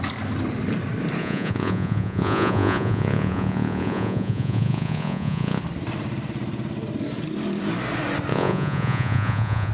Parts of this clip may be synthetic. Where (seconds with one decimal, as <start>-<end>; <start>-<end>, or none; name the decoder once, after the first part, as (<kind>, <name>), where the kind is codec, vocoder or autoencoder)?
1.2-5.6 (vocoder, Vocos); 8.3-9.7